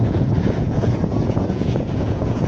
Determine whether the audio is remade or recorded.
remade